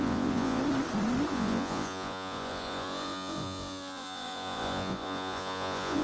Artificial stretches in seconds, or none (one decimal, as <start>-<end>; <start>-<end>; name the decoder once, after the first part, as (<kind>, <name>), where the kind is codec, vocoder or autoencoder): 0.0-0.6 (vocoder, Vocos); 1.3-6.0